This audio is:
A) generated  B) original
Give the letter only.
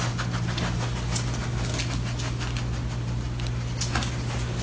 B